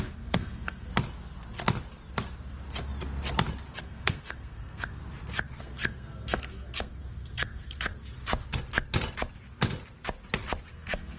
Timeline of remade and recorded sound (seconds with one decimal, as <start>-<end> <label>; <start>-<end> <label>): 0.0-0.9 remade; 0.9-3.8 recorded; 3.8-5.0 remade; 5.0-5.6 recorded; 5.6-7.9 remade; 7.9-10.7 recorded; 10.7-11.2 remade